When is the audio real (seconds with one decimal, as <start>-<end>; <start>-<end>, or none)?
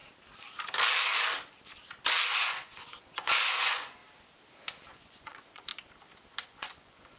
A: 0.0-2.4; 4.0-4.9; 5.7-6.4